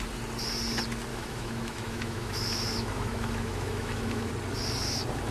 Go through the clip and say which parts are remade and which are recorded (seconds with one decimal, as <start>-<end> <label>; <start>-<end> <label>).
0.0-1.1 recorded; 1.1-4.3 remade; 4.3-5.3 recorded